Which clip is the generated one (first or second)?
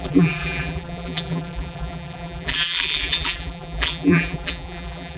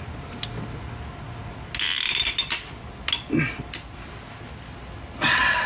first